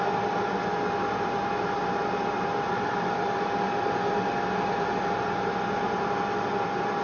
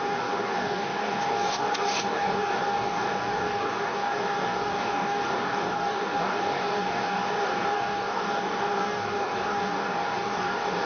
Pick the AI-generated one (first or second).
second